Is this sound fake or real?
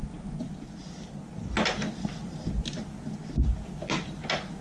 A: real